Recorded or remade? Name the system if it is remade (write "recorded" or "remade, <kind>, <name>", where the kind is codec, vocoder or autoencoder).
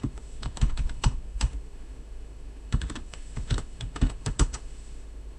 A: remade, autoencoder, DAC-VAE